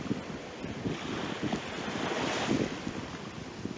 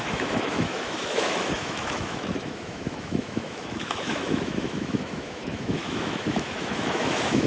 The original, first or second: first